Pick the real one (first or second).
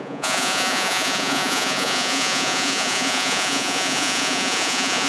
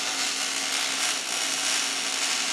second